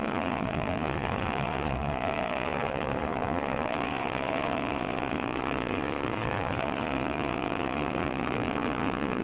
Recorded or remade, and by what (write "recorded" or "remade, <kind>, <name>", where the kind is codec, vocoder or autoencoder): remade, vocoder, Vocos